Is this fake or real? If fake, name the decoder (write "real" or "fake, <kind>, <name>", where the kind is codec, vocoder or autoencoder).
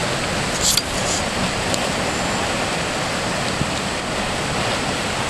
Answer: real